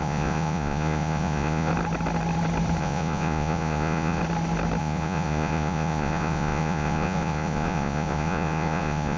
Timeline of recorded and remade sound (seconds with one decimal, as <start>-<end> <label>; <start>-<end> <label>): 0.0-1.7 remade; 1.7-2.8 recorded; 2.8-4.2 remade; 4.2-4.8 recorded; 4.8-9.2 remade

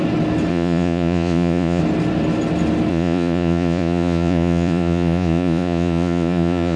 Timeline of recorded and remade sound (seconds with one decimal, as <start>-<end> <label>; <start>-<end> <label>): 0.0-0.5 recorded; 0.5-1.8 remade; 1.8-2.9 recorded; 2.9-6.8 remade

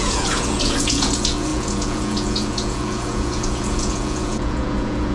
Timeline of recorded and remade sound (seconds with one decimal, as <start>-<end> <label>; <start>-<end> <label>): 0.0-5.1 remade

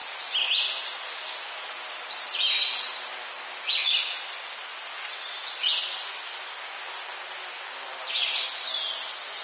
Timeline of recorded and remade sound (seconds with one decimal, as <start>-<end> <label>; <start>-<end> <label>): 0.0-9.4 recorded

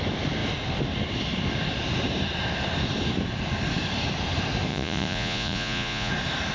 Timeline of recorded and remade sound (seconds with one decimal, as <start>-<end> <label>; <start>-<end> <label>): 0.0-4.7 recorded; 4.7-6.1 remade; 6.1-6.5 recorded

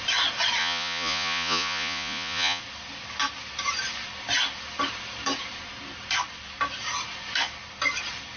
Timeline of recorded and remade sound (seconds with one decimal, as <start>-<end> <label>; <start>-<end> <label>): 0.0-0.6 recorded; 0.6-2.6 remade; 2.6-8.4 recorded

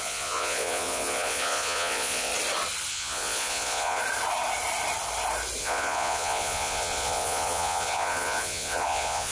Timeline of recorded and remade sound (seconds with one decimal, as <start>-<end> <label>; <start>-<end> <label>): 0.0-2.3 remade; 2.3-2.9 recorded; 2.9-4.0 remade; 4.0-5.6 recorded; 5.6-9.3 remade

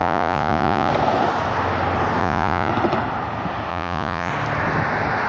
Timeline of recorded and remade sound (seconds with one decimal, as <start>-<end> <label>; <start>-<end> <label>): 0.0-0.9 remade; 0.9-2.2 recorded; 2.2-2.7 remade; 2.7-3.7 recorded; 3.7-4.3 remade; 4.3-5.3 recorded